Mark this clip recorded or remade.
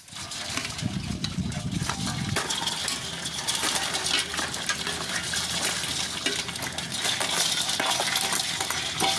recorded